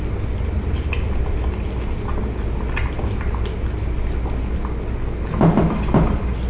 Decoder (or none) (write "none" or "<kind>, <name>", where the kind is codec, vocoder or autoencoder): none